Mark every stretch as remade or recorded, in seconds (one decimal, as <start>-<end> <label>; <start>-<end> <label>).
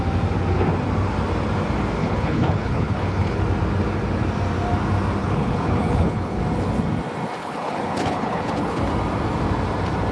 0.0-2.0 recorded; 2.0-3.4 remade; 3.4-5.2 recorded; 5.2-6.4 remade; 6.4-7.4 recorded; 7.4-8.8 remade; 8.8-10.1 recorded